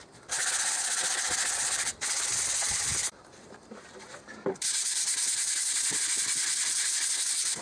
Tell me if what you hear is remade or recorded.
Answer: remade